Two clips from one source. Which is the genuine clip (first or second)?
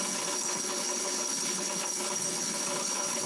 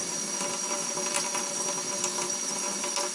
second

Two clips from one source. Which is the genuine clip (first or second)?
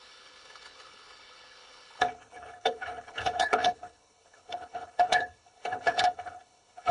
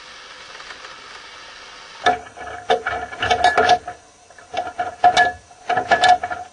second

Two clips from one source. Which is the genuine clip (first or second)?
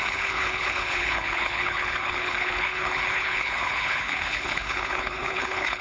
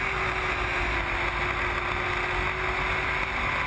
second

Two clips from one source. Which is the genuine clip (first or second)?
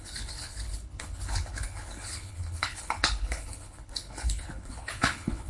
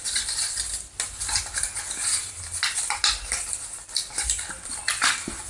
second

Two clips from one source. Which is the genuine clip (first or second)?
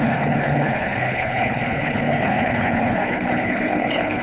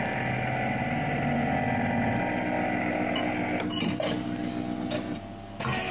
second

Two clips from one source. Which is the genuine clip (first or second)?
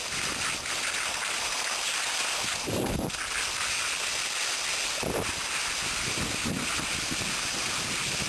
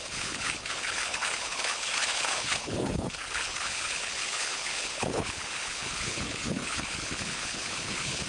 first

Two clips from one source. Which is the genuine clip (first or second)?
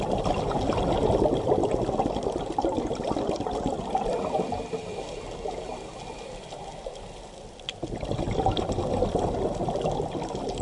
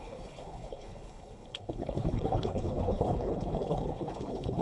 first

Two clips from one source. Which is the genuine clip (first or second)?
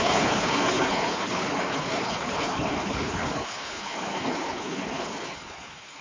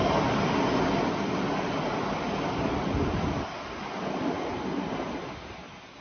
second